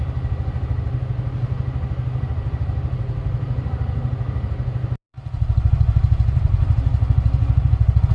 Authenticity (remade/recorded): recorded